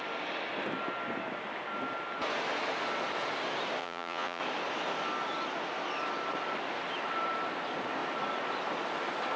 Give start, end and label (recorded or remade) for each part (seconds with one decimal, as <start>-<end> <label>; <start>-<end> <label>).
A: 0.0-3.8 recorded; 3.8-4.4 remade; 4.4-9.4 recorded